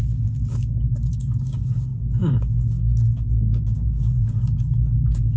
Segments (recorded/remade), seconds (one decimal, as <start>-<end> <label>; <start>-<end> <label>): 0.0-5.4 remade